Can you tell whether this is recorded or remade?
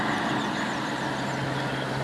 recorded